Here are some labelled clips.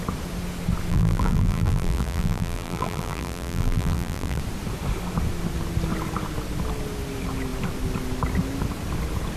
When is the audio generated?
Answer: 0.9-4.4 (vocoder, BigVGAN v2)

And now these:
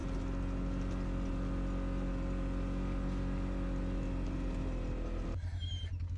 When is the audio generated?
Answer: none

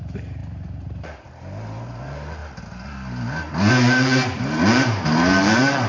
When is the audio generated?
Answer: 0.0-2.4 (vocoder, BigVGAN v2); 3.7-5.9